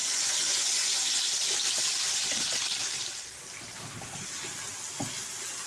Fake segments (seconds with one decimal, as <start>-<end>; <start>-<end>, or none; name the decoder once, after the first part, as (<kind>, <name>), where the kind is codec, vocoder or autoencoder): 0.0-1.2 (vocoder, Vocos)

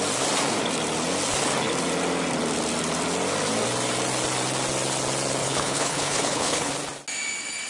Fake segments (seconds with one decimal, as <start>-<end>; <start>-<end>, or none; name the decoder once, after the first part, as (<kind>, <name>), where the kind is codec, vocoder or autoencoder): 5.4-6.7 (codec, HILCodec)

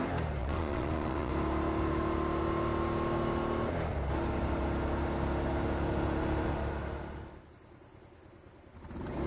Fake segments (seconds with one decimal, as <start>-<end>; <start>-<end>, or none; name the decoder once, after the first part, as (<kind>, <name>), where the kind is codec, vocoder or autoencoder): 0.4-1.3 (vocoder, Vocos)

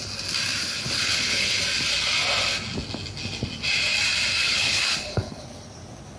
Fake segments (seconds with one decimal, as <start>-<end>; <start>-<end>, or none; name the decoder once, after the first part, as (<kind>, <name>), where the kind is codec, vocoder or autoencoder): 0.6-1.6 (codec, HILCodec); 4.4-5.4

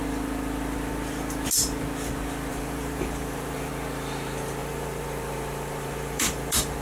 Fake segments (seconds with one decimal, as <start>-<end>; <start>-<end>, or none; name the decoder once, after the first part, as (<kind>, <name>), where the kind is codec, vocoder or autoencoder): 2.5-3.7 (vocoder, BigVGAN v2); 4.6-6.8

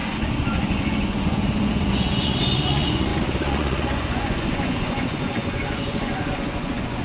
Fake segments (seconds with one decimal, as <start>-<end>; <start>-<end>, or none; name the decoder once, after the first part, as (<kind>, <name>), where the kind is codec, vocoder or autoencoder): 0.0-7.0 (vocoder, Vocos)